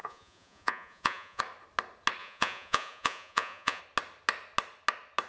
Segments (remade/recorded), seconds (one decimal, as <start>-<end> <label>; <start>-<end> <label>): 0.0-1.4 remade; 1.4-2.2 recorded; 2.2-3.8 remade; 3.8-5.3 recorded